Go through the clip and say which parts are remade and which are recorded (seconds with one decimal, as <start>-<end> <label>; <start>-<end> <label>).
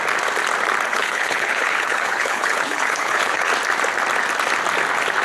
0.0-0.9 recorded; 0.9-3.5 remade; 3.5-5.2 recorded